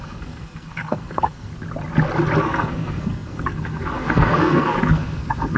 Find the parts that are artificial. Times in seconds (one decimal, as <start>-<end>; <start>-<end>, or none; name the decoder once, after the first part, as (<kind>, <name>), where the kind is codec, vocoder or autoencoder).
0.0-1.5 (codec, SNAC); 2.4-5.6